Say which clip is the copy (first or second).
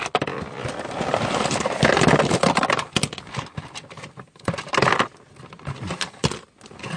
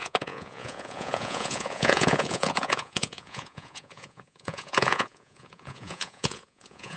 second